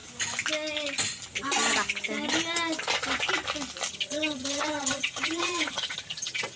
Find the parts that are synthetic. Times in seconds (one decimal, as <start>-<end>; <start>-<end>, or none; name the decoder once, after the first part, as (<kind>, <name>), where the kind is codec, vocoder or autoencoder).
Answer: 3.9-6.6 (vocoder, HiFi-GAN)